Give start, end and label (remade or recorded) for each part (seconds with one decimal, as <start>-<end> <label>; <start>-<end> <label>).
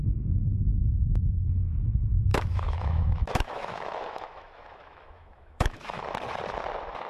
0.0-2.3 recorded; 2.3-6.0 remade; 6.0-7.1 recorded